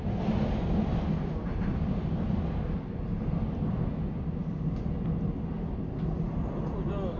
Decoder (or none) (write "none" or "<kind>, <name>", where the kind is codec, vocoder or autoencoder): none